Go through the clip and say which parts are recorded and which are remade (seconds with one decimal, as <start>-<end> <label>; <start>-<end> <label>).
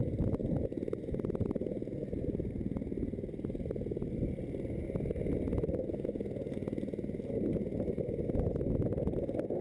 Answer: 0.0-0.4 recorded; 0.4-4.8 remade; 4.8-9.6 recorded